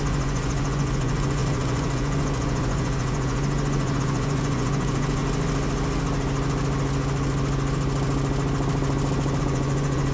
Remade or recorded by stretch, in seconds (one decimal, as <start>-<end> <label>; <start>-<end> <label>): 0.0-5.2 remade; 5.2-9.4 recorded; 9.4-10.1 remade